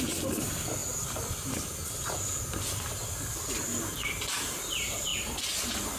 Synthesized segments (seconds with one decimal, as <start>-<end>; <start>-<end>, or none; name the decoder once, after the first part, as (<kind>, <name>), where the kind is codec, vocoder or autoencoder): none